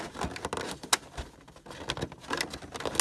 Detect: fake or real real